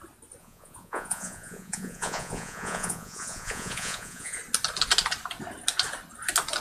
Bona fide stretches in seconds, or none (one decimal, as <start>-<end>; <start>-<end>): 0.0-0.4; 4.4-6.6